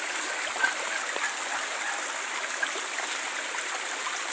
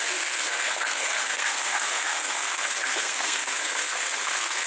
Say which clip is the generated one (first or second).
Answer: second